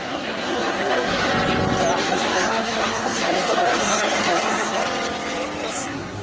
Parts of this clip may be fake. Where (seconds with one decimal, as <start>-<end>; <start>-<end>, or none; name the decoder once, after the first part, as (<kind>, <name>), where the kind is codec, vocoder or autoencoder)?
0.0-1.3 (codec, SNAC); 2.0-4.8; 5.7-6.2